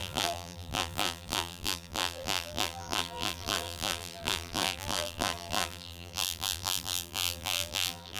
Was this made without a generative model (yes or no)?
no